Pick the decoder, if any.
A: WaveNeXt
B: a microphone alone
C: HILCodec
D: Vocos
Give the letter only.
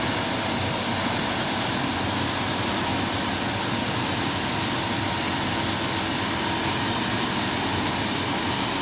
B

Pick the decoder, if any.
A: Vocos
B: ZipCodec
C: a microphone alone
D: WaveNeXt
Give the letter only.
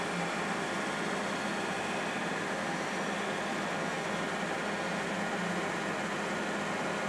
C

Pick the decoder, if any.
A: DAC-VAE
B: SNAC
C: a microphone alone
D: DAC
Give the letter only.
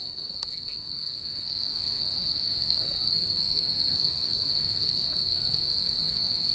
B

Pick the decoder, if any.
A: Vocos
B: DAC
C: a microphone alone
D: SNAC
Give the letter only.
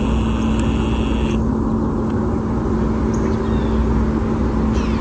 C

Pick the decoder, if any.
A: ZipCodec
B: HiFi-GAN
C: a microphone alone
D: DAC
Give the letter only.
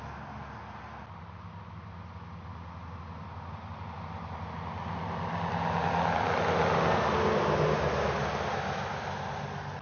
C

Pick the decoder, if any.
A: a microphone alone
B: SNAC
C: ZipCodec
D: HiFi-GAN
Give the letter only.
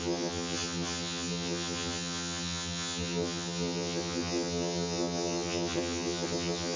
D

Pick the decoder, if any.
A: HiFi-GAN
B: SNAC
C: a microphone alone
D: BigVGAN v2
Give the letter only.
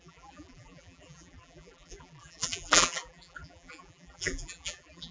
D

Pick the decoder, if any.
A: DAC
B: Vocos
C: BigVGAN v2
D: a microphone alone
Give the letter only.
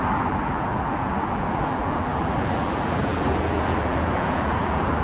C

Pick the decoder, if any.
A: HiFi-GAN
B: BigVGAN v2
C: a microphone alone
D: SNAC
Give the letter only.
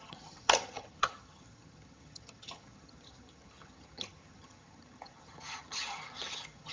A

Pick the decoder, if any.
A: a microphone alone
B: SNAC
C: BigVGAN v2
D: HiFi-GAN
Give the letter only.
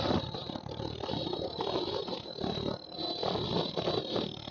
A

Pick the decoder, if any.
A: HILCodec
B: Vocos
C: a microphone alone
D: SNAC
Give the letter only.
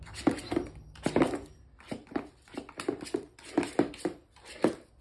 C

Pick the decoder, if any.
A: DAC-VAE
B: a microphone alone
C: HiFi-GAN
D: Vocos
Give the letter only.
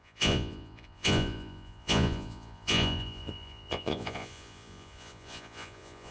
D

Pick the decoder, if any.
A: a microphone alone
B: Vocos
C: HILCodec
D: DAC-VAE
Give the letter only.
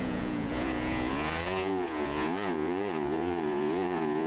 B